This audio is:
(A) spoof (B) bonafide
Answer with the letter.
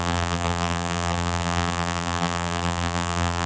A